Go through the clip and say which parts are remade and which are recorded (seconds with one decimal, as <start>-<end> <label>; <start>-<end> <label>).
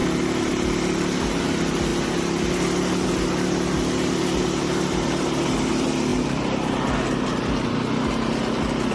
0.0-8.9 recorded